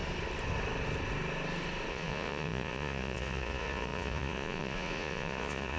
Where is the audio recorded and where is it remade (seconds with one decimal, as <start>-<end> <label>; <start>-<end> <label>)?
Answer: 0.0-1.9 recorded; 1.9-5.8 remade